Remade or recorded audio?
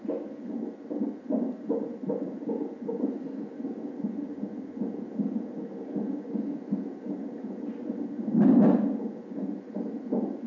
recorded